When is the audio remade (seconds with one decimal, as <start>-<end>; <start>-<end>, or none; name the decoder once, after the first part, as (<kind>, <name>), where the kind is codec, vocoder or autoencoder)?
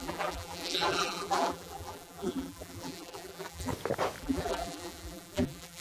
0.0-3.7 (vocoder, BigVGAN v2); 4.2-5.8